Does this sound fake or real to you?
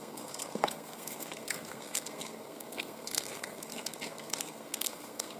fake